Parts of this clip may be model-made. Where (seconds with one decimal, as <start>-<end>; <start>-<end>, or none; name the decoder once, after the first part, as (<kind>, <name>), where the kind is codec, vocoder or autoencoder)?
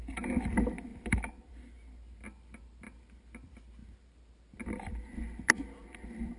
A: none